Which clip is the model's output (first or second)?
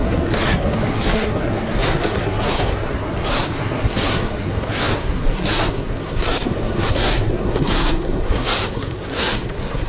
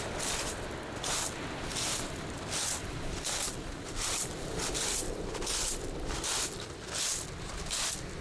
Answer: first